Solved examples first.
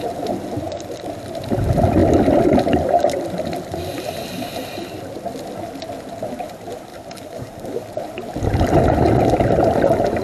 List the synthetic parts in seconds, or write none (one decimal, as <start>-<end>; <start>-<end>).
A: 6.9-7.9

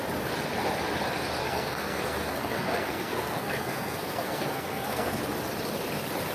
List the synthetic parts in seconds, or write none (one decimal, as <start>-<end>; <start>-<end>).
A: 1.4-5.2

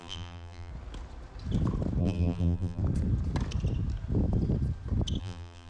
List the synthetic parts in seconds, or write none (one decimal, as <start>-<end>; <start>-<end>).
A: 0.0-0.7; 2.0-2.8; 5.2-5.7

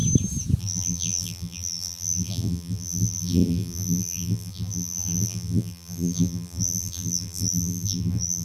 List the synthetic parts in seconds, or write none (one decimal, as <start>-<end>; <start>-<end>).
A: 0.6-8.4

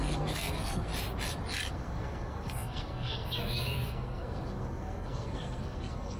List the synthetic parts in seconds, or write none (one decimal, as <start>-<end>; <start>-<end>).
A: 0.0-0.9; 1.7-6.2

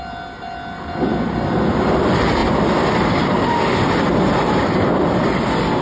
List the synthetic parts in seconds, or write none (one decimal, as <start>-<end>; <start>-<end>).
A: none

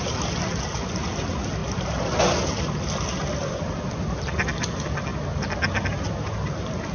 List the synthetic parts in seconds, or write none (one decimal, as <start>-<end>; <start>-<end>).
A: none

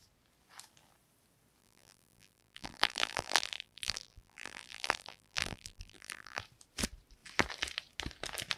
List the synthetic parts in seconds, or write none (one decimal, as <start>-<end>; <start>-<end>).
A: 1.6-6.4